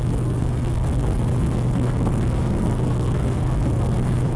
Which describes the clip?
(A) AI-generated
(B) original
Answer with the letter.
A